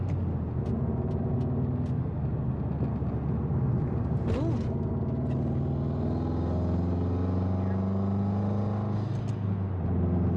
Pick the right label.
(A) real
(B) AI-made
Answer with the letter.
A